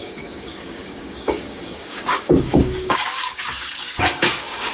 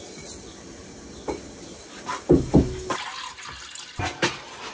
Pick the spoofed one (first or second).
first